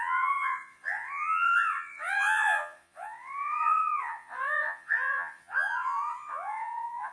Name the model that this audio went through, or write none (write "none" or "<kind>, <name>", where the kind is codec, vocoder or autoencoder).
vocoder, Vocos